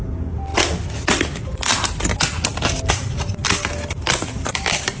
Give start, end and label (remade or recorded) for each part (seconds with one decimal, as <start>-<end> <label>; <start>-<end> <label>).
0.0-0.5 remade; 0.5-2.9 recorded; 2.9-3.4 remade; 3.4-4.2 recorded; 4.2-5.0 remade